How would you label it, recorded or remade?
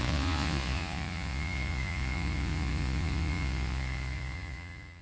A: remade